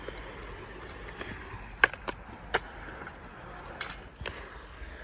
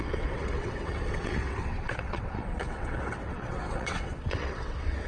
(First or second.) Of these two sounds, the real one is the first